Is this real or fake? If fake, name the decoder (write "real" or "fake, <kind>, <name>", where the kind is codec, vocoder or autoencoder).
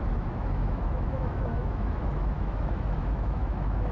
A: fake, autoencoder, DAC-VAE